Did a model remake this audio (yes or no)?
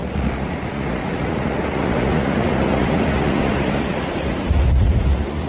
yes